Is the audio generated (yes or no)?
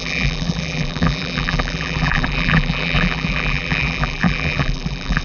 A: yes